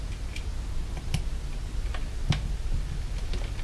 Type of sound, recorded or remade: recorded